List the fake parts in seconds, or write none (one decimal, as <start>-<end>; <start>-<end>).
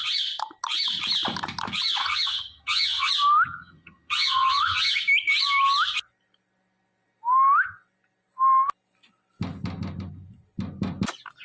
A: 2.0-3.1; 3.5-5.0